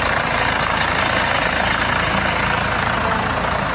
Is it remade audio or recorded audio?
recorded